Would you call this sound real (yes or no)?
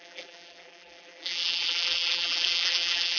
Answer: no